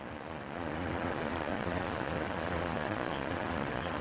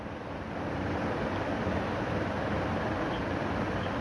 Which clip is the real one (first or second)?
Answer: second